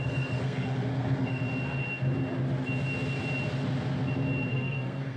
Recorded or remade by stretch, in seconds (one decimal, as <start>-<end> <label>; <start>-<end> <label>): 0.0-1.4 remade; 1.4-4.5 recorded; 4.5-5.2 remade